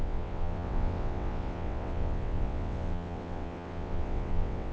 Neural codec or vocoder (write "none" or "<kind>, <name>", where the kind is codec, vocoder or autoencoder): vocoder, WaveNeXt